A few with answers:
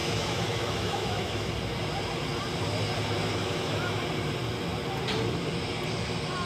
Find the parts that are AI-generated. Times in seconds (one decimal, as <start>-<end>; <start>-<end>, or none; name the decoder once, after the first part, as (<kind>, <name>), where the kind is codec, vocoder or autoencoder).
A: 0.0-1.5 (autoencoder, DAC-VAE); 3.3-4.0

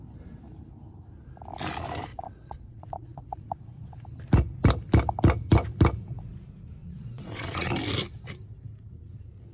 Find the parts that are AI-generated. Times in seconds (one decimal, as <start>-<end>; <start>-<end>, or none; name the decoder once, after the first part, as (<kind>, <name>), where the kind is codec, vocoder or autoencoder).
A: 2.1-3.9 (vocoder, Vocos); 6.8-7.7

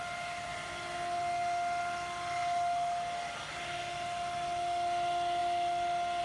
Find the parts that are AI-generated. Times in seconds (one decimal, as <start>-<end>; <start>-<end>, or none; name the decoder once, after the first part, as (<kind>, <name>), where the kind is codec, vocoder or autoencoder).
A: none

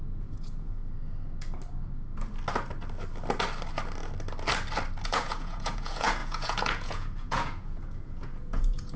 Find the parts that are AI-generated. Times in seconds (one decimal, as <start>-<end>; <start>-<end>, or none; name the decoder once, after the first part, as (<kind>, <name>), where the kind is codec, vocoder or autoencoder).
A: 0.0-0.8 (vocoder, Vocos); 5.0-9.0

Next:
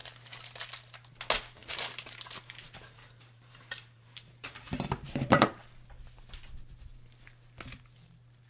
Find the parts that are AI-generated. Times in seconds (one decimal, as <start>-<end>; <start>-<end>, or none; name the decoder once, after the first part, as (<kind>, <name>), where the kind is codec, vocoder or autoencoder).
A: 1.6-5.6 (vocoder, BigVGAN v2)

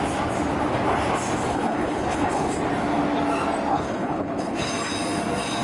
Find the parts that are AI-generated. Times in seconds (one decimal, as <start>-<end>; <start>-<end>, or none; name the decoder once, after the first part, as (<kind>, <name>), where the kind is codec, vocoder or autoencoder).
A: 1.5-2.6 (codec, HILCodec); 3.7-4.7

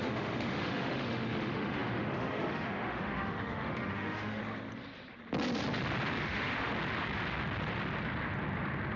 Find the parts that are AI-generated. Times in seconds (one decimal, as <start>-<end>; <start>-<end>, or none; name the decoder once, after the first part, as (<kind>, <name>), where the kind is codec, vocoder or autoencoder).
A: 0.0-4.4 (autoencoder, DAC-VAE); 6.2-6.7